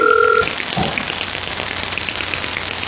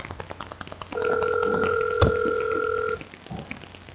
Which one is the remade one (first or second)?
first